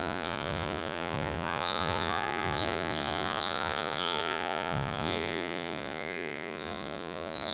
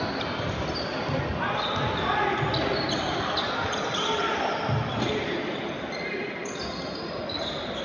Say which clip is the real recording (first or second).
second